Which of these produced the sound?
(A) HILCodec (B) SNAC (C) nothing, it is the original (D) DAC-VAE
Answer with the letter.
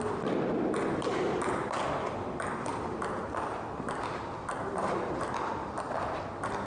C